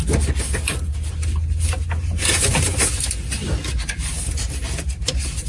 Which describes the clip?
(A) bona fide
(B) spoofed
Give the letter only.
A